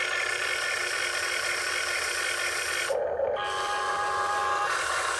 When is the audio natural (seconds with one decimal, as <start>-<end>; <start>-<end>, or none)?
0.0-5.2